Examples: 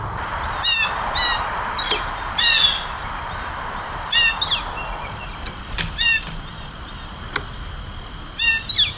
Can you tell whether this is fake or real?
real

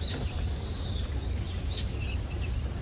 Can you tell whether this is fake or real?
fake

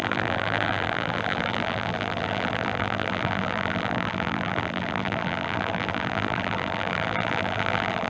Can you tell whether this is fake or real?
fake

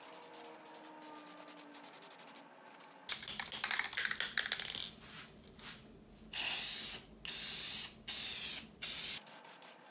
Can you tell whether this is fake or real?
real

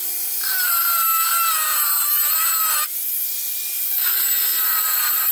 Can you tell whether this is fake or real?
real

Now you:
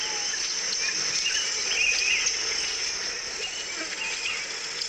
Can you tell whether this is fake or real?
real